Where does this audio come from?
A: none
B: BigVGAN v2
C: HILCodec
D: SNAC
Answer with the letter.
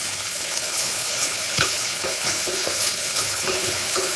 C